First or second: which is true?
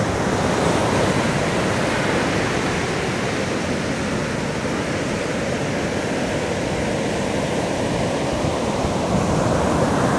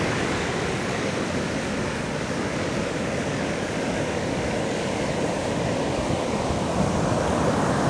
first